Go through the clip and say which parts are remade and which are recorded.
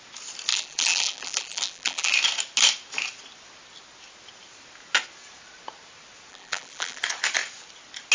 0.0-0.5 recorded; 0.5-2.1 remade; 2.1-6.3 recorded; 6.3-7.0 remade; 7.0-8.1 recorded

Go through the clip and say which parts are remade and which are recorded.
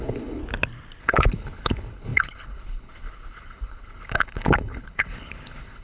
0.0-0.4 remade; 0.4-1.0 recorded; 1.0-5.8 remade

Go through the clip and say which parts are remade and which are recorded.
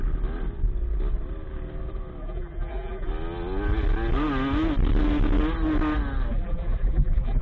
0.0-2.2 recorded; 2.2-3.1 remade; 3.1-6.3 recorded; 6.3-7.4 remade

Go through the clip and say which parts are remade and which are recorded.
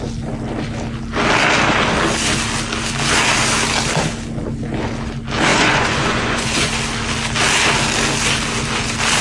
0.0-5.5 recorded; 5.5-6.7 remade; 6.7-9.2 recorded